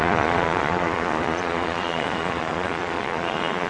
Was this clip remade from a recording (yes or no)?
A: yes